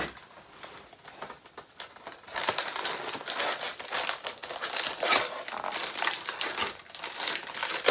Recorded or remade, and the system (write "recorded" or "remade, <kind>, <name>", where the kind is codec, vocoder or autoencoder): recorded